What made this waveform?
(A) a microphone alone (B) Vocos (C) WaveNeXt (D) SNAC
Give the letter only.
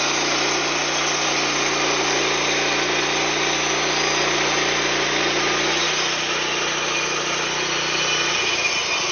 A